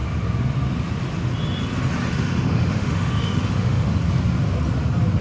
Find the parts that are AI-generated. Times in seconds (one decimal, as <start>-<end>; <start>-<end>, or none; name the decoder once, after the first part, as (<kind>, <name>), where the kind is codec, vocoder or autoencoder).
2.1-3.9 (autoencoder, DAC-VAE)